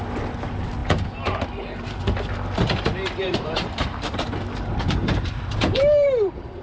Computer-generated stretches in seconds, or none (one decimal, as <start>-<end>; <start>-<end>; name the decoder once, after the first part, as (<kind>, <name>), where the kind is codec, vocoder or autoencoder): 3.2-4.3 (vocoder, BigVGAN v2); 5.0-6.6